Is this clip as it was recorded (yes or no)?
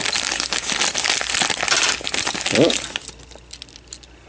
yes